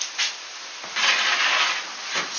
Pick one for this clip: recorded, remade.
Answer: recorded